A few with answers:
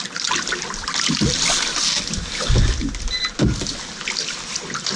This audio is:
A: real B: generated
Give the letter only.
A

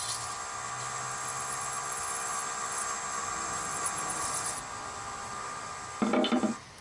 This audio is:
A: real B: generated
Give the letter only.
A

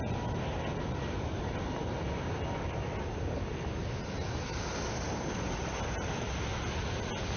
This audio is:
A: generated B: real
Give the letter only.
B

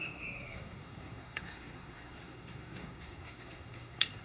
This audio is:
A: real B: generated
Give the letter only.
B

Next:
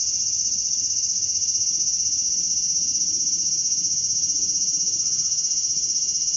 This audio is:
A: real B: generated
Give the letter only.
A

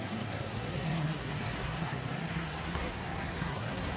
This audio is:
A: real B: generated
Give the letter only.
B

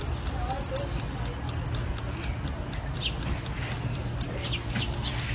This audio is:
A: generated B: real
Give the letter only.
B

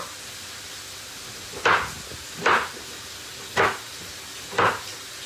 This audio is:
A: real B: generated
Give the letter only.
A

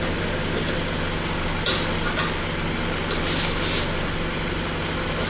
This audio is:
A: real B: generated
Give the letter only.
A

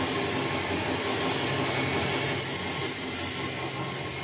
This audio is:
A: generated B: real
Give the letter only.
B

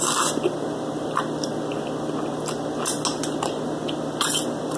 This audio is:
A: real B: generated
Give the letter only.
A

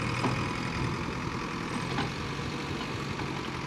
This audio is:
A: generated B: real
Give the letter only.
B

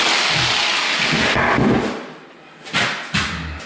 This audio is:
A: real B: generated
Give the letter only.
A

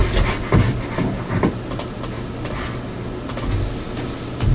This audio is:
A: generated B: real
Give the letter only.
B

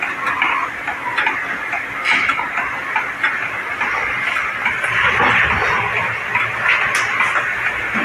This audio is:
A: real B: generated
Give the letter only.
A